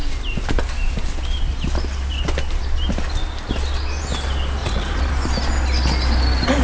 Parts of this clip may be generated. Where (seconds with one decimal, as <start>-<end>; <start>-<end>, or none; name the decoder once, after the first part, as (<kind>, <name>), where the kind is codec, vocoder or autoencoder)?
4.6-5.1 (vocoder, Vocos)